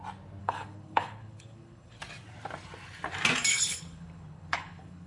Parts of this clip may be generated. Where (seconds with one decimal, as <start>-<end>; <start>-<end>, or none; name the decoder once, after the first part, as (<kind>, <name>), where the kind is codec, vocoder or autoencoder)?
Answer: 0.4-2.0 (codec, HILCodec); 3.5-5.1